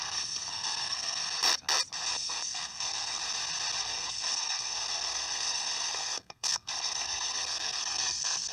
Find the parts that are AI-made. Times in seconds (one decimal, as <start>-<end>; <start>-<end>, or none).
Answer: 0.0-1.2; 2.1-3.2; 3.8-8.5